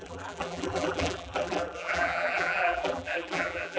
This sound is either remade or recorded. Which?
remade